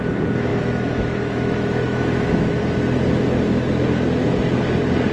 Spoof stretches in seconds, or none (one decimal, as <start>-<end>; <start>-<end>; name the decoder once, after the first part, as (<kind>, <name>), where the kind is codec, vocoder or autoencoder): 0.5-2.6 (autoencoder, DAC-VAE)